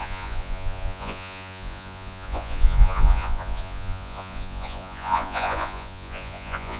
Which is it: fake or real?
fake